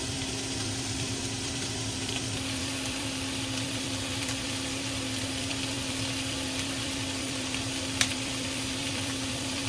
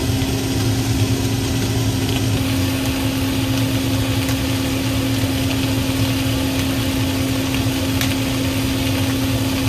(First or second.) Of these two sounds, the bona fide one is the second